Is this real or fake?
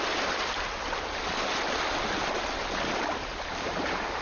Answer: real